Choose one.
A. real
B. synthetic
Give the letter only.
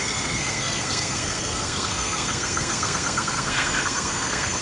B